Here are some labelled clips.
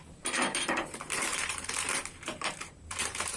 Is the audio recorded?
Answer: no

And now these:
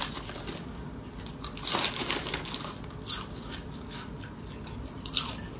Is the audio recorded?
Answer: yes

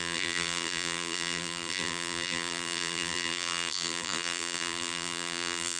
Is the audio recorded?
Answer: no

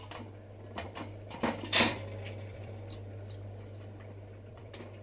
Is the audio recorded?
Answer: no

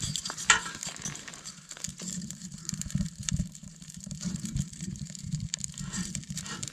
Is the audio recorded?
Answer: no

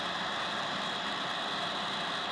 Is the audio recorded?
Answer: yes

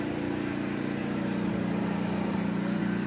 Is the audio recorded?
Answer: no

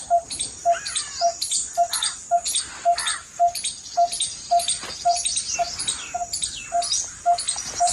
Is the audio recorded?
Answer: yes